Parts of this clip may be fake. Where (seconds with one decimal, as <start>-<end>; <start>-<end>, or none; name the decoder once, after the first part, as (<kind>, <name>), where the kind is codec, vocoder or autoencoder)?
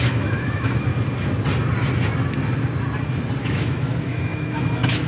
0.0-0.9 (autoencoder, DAC-VAE); 3.4-5.1